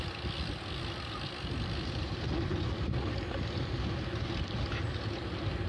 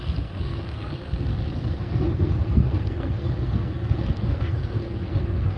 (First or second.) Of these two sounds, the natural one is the first